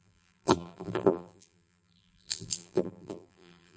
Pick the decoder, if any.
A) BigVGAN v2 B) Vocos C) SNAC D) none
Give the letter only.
A